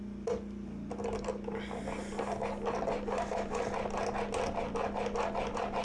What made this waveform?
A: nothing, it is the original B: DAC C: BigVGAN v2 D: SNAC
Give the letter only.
A